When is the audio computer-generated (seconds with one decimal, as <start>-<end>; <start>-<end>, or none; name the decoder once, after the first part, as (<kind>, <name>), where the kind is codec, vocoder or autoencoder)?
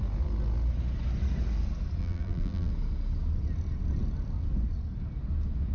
2.0-2.7 (vocoder, BigVGAN v2)